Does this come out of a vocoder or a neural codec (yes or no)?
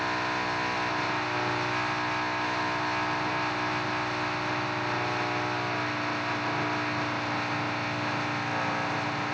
no